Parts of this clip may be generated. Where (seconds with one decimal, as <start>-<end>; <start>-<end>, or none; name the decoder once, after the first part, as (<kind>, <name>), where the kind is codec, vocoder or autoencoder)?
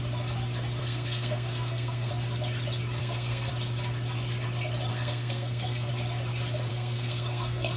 0.8-2.1 (codec, SNAC); 3.0-3.5; 4.9-5.9; 6.7-7.8